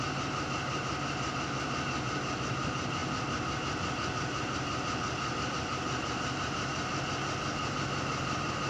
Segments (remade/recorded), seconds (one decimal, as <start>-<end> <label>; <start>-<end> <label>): 0.0-3.0 remade; 3.0-5.5 recorded; 5.5-6.7 remade; 6.7-7.7 recorded; 7.7-8.7 remade